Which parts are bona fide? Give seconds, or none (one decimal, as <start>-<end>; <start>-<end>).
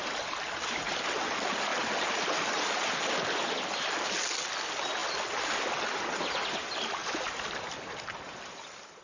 0.0-1.7; 3.1-9.0